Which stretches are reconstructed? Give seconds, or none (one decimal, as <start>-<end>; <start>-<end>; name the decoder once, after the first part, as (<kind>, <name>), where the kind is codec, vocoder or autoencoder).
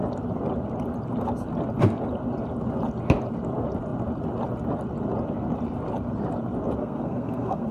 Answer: 6.8-7.7 (codec, SNAC)